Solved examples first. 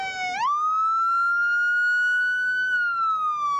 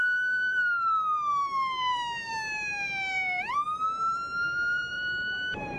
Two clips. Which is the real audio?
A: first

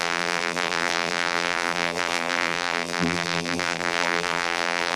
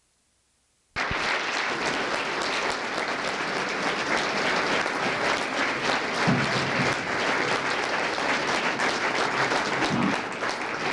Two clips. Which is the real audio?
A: second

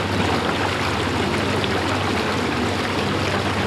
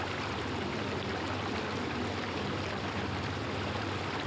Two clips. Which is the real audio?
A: first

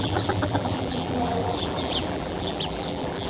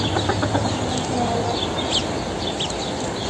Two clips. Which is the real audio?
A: second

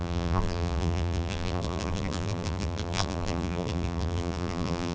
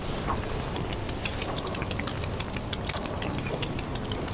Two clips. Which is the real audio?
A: second